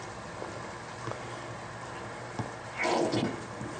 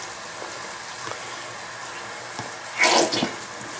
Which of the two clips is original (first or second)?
second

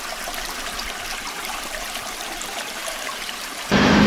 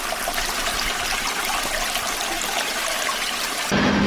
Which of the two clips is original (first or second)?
second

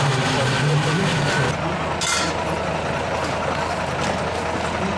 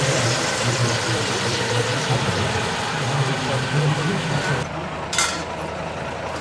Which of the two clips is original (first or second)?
first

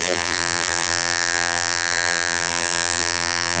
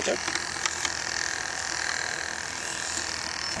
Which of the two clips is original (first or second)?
second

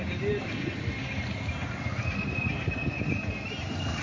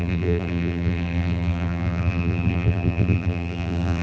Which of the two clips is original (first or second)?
first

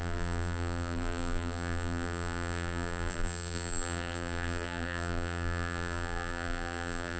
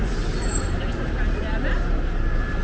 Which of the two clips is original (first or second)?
second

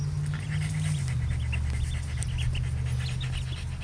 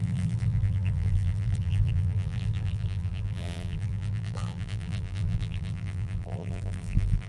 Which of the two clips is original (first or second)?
first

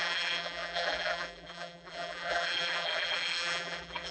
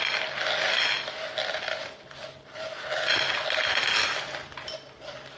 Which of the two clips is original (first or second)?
second